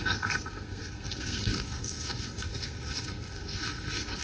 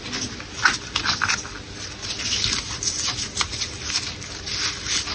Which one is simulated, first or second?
first